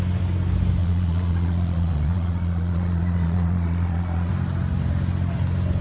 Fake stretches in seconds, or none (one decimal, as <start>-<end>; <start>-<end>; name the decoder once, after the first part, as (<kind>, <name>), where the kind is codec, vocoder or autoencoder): 0.8-4.3 (vocoder, Vocos)